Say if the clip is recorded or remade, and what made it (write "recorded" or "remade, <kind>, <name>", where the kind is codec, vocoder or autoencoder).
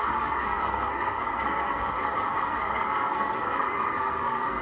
remade, codec, SNAC